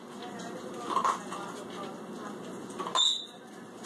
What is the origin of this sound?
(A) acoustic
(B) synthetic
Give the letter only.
A